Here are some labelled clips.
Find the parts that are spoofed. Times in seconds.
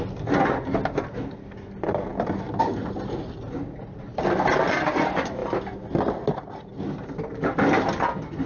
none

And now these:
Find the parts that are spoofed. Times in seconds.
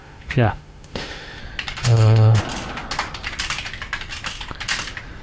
0.0-1.4 (autoencoder, DAC-VAE); 1.8-2.4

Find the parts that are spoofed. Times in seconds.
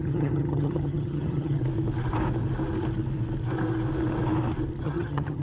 0.0-1.6 (vocoder, HiFi-GAN); 4.8-5.4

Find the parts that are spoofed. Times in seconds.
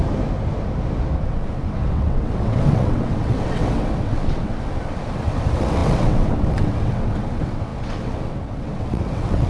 1.2-9.5 (vocoder, WaveNeXt)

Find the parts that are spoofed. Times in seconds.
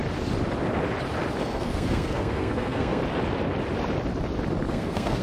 1.4-3.0 (codec, SNAC); 4.7-5.2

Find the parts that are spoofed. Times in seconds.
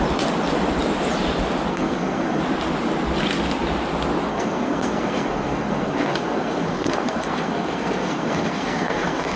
1.7-2.4 (codec, SNAC); 4.3-9.4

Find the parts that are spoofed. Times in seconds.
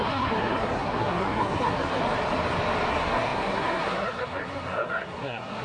0.0-2.0 (codec, SNAC); 2.9-5.6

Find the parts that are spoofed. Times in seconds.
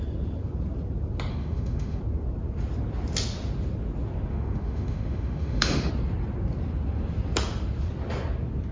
1.3-2.0 (autoencoder, DAC-VAE); 4.3-5.9